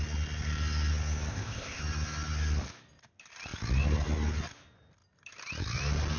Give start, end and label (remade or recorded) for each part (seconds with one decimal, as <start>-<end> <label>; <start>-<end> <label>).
0.0-1.3 recorded; 1.3-1.8 remade; 1.8-6.2 recorded